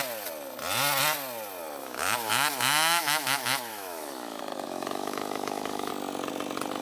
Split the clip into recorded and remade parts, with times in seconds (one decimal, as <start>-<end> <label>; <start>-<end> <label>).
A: 0.0-1.8 recorded; 1.8-5.9 remade; 5.9-6.8 recorded